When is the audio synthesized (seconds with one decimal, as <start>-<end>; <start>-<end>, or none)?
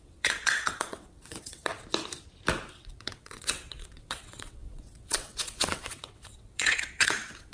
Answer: 0.0-1.7; 2.7-7.5